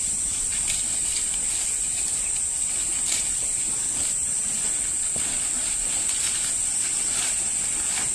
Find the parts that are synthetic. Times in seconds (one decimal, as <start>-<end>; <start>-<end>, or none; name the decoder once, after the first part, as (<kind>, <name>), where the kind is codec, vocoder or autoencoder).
none